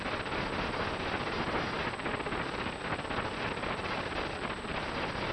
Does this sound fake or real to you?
real